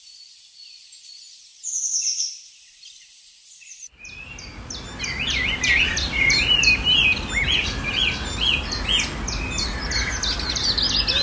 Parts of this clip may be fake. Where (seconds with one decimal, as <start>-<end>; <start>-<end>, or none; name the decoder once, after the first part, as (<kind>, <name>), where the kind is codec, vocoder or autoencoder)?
none